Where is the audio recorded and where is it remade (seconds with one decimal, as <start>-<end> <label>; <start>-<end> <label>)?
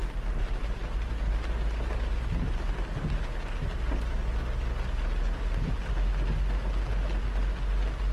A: 0.0-8.1 recorded